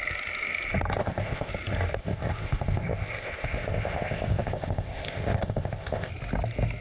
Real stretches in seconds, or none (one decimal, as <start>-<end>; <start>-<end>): 0.0-1.0; 1.5-2.0; 6.1-6.8